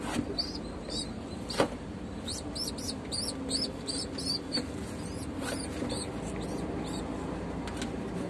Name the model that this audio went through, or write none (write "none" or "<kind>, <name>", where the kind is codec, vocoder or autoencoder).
none